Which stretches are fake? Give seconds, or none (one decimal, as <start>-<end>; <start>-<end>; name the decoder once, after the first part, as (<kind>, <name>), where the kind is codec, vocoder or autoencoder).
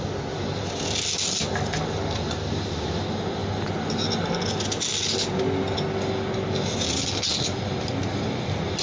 none